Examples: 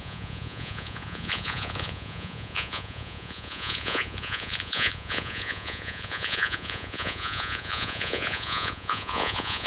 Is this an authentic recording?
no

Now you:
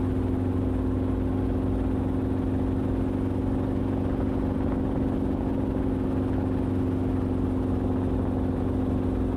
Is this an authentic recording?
yes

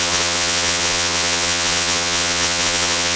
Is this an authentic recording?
no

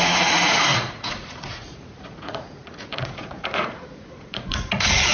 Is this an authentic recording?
no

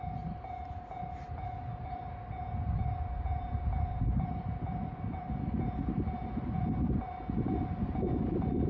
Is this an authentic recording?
yes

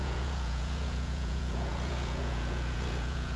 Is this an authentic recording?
no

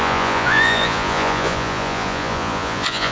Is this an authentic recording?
no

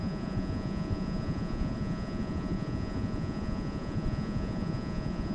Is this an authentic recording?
no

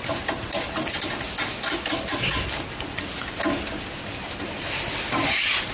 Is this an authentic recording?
yes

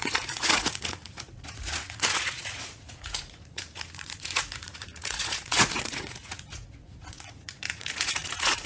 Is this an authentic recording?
no